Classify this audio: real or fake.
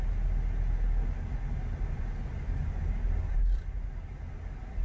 real